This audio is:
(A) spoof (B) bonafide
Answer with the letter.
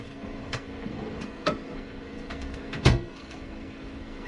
A